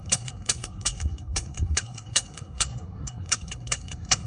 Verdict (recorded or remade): remade